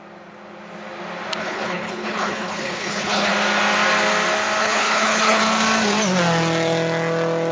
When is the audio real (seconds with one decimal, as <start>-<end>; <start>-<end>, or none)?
0.0-1.4; 3.3-4.6; 5.4-7.5